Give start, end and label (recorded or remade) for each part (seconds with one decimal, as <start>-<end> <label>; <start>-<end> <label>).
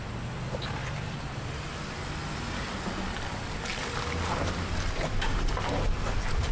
0.0-6.5 recorded